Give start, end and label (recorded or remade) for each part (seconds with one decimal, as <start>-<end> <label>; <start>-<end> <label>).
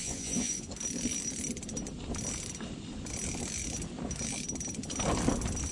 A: 0.0-0.7 remade; 0.7-5.7 recorded